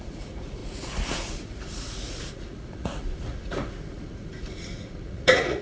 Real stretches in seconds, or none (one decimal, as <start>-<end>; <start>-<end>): none